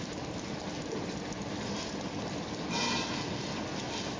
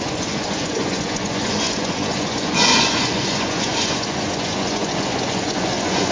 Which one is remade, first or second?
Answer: second